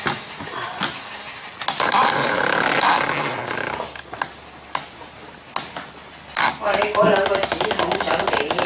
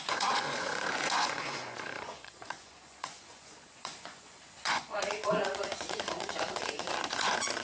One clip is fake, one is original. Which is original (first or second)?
first